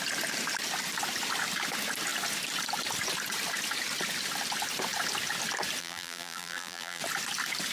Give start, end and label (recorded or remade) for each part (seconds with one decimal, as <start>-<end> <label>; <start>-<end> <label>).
0.0-5.8 recorded; 5.8-7.0 remade; 7.0-7.7 recorded